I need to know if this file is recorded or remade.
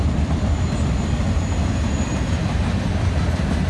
recorded